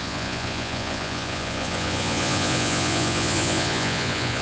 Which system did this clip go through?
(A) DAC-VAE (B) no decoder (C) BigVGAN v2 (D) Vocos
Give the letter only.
D